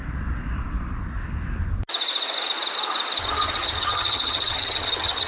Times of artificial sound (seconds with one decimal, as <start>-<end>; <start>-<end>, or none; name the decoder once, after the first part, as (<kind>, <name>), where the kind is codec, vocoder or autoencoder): 3.2-5.3 (vocoder, HiFi-GAN)